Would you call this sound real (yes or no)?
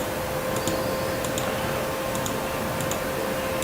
yes